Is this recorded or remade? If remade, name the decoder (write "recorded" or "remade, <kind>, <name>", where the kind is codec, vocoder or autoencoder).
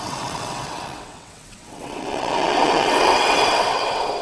remade, vocoder, WaveNeXt